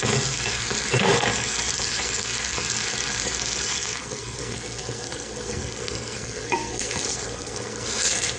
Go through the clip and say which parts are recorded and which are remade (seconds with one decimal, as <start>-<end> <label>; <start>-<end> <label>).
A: 0.0-8.4 remade